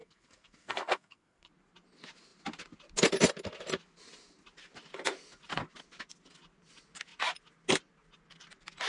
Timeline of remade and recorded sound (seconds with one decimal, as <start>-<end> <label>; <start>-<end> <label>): 0.0-1.5 remade; 1.5-8.9 recorded